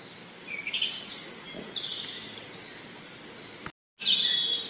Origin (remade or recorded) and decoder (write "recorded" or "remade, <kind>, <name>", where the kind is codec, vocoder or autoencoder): recorded